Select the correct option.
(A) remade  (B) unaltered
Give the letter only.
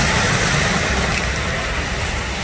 B